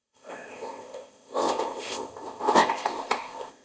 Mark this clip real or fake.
fake